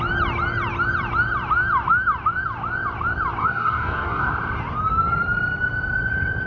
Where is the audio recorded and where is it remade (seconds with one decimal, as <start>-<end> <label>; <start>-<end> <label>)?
0.0-3.4 recorded; 3.4-4.3 remade; 4.3-6.5 recorded